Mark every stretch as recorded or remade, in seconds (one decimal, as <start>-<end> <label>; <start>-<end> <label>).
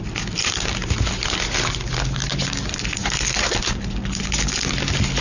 0.0-5.2 recorded